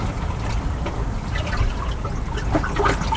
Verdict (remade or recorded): recorded